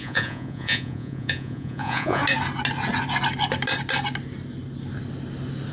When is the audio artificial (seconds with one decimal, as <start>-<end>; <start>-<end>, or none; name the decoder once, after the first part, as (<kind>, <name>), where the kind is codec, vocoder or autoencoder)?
0.0-2.2 (vocoder, Vocos)